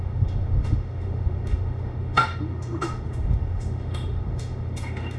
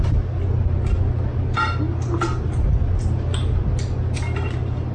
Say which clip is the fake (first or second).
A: first